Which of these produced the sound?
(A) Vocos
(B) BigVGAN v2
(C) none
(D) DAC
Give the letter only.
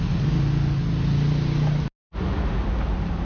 C